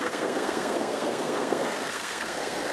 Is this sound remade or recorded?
remade